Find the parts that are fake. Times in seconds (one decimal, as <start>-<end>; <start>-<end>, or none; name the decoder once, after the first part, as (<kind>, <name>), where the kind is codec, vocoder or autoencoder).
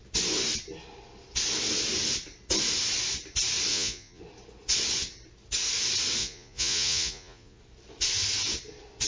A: 3.7-4.2 (vocoder, Vocos); 6.2-7.6